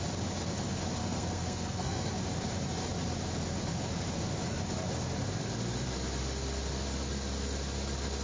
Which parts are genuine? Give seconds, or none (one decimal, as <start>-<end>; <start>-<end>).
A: 0.0-1.0; 2.1-8.2